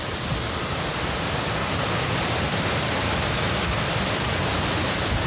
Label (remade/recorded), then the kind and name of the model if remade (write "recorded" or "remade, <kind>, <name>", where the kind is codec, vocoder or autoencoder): recorded